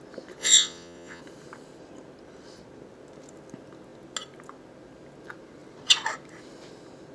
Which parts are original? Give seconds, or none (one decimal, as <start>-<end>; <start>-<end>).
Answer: 0.0-0.4; 1.2-7.1